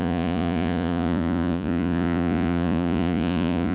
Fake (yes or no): yes